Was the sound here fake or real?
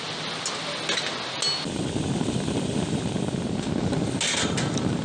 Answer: real